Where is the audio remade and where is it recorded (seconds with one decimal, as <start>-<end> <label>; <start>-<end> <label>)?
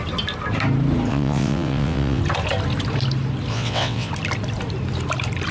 0.0-1.1 recorded; 1.1-2.2 remade; 2.2-3.5 recorded; 3.5-4.1 remade; 4.1-5.5 recorded